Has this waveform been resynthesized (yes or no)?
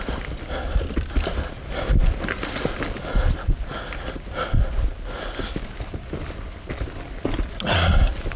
no